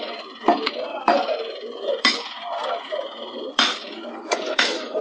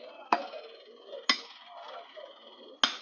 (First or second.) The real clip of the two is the second